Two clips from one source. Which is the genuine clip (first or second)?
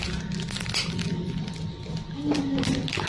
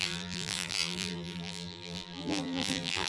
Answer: first